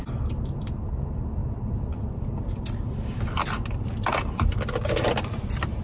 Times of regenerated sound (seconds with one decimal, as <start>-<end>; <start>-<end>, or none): none